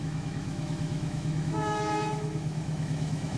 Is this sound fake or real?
fake